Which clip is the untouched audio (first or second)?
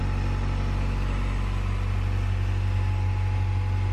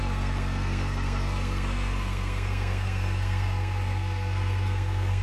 first